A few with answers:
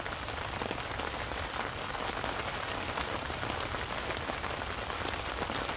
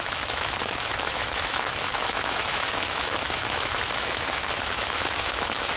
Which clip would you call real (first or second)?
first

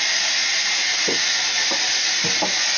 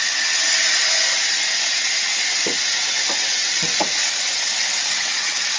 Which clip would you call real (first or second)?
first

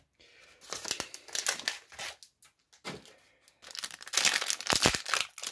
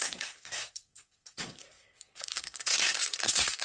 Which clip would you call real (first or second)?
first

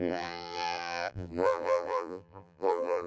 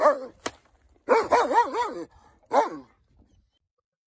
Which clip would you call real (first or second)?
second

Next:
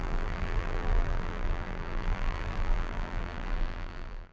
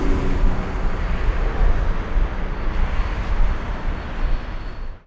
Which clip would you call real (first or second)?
second